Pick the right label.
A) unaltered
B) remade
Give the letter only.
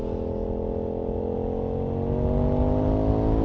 A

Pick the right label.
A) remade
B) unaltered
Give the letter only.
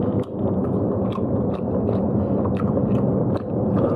B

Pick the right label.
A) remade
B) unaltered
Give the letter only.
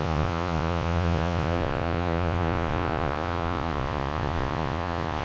A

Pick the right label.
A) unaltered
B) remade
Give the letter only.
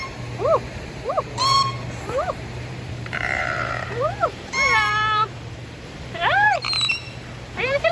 B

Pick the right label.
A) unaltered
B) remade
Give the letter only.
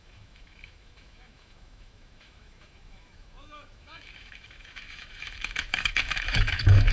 B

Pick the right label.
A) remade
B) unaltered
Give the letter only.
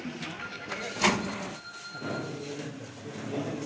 B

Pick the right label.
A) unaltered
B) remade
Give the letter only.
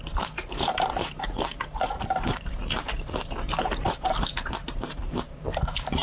B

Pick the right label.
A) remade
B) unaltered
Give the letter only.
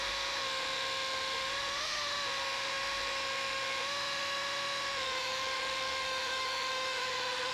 A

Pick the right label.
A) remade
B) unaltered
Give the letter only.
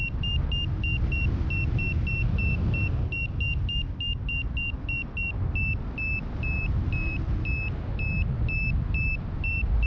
B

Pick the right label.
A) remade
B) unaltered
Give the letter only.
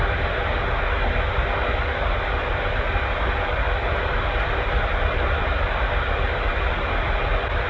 B